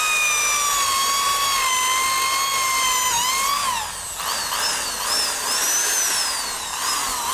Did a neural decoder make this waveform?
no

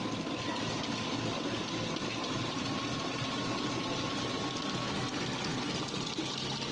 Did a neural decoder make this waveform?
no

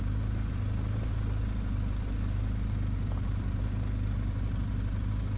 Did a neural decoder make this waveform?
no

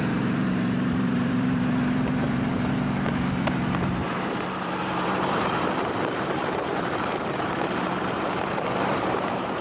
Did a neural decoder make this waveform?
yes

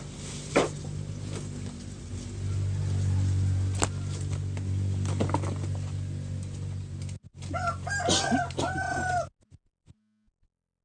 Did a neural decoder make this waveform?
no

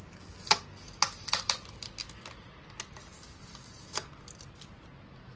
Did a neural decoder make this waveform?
no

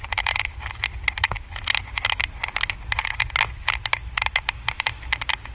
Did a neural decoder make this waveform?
no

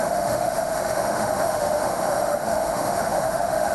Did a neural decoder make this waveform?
yes